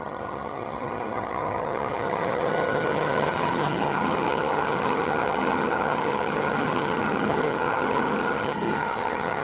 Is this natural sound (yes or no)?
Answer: no